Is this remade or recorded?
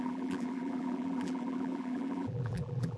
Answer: remade